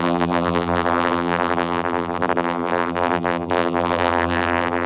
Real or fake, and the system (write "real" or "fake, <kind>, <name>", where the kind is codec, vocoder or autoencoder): fake, vocoder, BigVGAN v2